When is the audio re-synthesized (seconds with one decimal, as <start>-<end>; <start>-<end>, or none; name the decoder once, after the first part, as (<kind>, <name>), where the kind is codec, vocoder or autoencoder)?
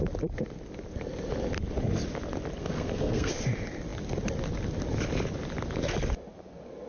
2.6-3.3 (codec, SNAC)